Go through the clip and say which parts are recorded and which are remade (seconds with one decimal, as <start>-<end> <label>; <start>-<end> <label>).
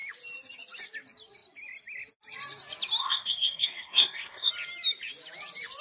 0.0-3.0 recorded; 3.0-4.5 remade; 4.5-5.8 recorded